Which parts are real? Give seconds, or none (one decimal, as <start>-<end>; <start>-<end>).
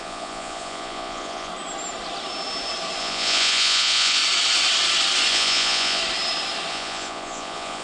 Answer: 1.5-3.0; 4.2-5.3; 6.0-6.7